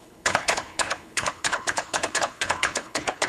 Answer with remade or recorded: remade